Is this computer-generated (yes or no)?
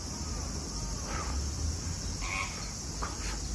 no